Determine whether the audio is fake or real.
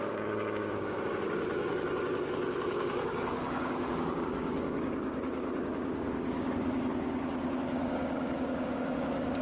fake